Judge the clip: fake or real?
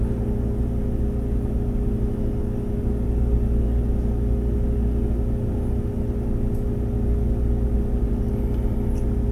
real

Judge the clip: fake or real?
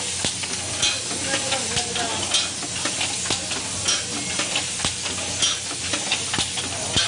real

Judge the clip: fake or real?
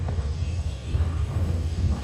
fake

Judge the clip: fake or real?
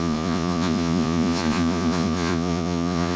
fake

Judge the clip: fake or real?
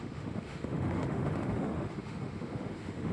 fake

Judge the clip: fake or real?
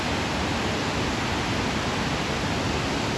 real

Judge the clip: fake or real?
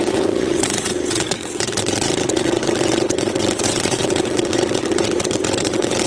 fake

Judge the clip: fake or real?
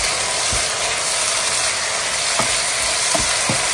real